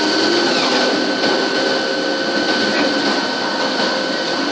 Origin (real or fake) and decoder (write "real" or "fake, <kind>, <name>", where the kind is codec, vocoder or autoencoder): real